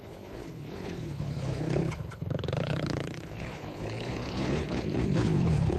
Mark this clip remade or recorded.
remade